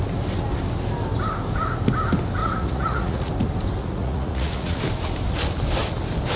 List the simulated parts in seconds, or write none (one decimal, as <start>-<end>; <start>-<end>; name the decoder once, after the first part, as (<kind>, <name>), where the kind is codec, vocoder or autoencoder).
2.4-3.3 (vocoder, Vocos); 3.8-4.8